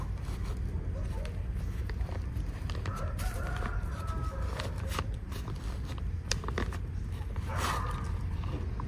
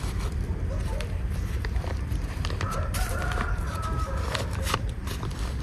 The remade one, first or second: second